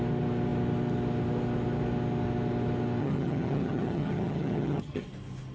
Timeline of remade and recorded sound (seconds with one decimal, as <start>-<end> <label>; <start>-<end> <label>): 0.0-3.0 recorded; 3.0-5.0 remade; 5.0-5.5 recorded